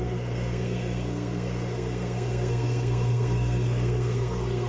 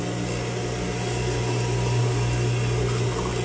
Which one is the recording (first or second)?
second